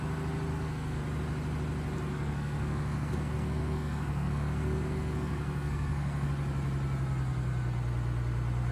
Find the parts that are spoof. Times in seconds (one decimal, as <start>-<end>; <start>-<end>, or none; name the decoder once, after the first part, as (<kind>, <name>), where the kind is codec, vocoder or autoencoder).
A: 0.5-1.0 (codec, SNAC); 2.1-6.3